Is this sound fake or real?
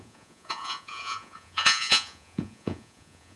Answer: fake